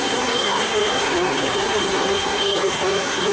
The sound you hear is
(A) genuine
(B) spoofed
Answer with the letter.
B